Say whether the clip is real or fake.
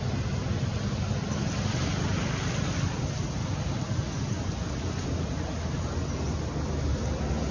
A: real